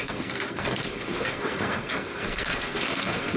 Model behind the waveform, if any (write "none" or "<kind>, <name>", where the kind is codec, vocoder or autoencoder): codec, SNAC